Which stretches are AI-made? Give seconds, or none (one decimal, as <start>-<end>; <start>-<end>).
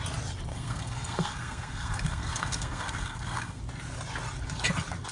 0.5-3.6